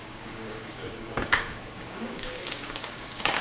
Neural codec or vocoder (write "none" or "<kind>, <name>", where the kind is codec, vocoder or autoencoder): codec, DAC